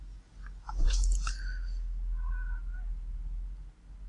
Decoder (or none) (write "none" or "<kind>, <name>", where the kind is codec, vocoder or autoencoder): none